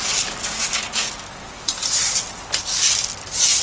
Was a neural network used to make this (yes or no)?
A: no